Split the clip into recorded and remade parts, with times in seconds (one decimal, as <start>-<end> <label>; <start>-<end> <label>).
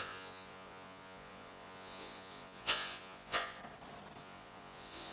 0.0-3.6 remade; 3.6-4.2 recorded; 4.2-5.1 remade